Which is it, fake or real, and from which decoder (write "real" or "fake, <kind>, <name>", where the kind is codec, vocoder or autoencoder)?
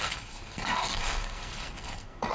fake, codec, SNAC